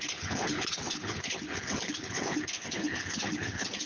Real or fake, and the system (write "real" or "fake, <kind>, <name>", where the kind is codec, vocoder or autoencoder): fake, codec, HILCodec